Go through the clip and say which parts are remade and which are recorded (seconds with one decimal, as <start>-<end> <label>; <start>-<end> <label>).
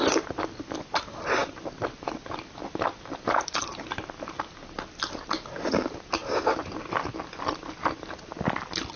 0.0-9.0 recorded